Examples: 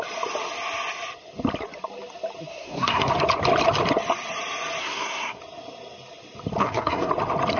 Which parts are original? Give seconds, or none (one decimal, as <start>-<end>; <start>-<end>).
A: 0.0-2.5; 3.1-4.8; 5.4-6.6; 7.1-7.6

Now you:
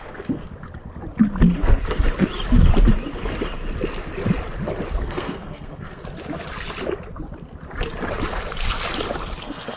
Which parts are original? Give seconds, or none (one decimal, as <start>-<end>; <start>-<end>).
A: 0.4-5.0; 6.0-9.4

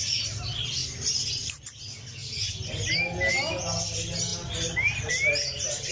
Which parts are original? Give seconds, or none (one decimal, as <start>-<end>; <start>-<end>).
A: 0.0-5.9

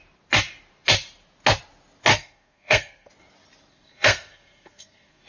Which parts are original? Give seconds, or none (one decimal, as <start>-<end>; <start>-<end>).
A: 0.0-2.1; 3.1-3.7

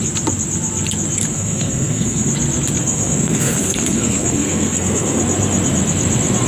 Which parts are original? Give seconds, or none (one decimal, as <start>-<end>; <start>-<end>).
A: 0.0-1.3; 2.3-2.8; 5.2-6.5

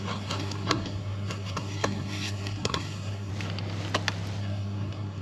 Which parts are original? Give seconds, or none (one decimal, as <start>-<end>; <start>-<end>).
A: 3.3-4.4

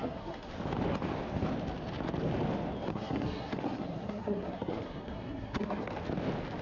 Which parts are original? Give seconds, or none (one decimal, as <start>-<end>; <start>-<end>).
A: 0.5-2.9; 5.9-6.6

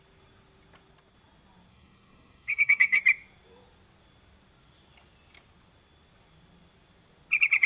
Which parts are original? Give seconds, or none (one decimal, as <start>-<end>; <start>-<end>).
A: 0.0-1.7; 3.0-7.7